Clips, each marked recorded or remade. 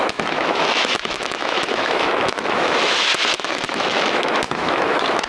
remade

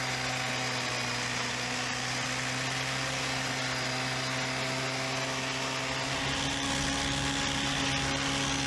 recorded